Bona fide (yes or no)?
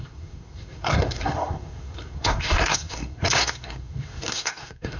no